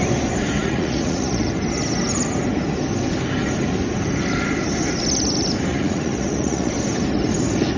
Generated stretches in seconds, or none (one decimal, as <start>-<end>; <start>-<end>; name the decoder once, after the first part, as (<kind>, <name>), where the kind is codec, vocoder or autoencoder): 0.6-1.5 (vocoder, Vocos); 5.7-6.7

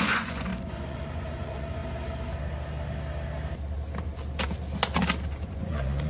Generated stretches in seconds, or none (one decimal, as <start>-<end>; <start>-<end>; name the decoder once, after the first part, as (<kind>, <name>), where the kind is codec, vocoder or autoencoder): 0.0-1.8 (vocoder, Vocos); 5.5-6.1